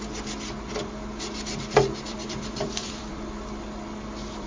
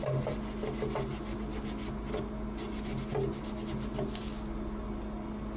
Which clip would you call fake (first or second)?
first